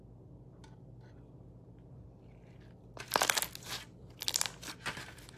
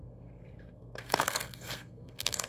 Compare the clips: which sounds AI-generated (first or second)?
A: second